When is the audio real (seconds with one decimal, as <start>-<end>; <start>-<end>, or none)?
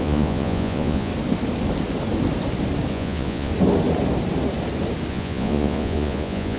1.1-2.9; 3.5-5.1